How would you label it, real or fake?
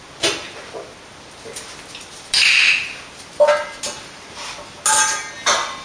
real